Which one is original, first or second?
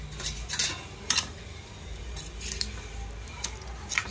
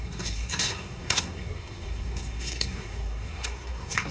first